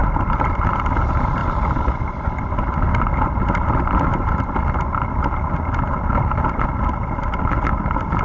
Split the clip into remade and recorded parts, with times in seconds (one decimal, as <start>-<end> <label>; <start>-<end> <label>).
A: 0.0-4.1 remade; 4.1-7.6 recorded; 7.6-8.2 remade